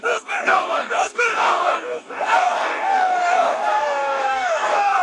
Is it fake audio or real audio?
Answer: fake